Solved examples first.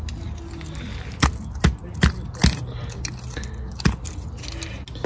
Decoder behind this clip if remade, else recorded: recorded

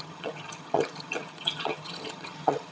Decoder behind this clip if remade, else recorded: remade, vocoder, HiFi-GAN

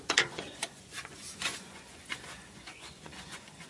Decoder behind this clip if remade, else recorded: remade, vocoder, Vocos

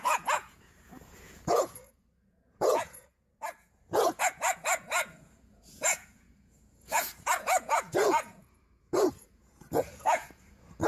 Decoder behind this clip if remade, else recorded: remade, vocoder, Vocos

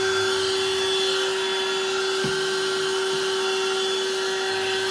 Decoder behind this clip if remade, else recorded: recorded